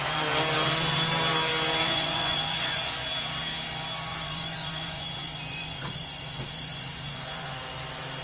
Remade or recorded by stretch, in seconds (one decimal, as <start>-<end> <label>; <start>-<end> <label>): 0.0-1.8 recorded; 1.8-2.8 remade; 2.8-4.1 recorded; 4.1-7.6 remade; 7.6-8.2 recorded